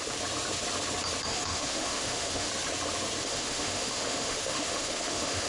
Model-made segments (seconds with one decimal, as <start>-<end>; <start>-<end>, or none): 1.3-2.5; 3.2-5.5